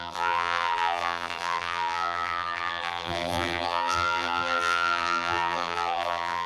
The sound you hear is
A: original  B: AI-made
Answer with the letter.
B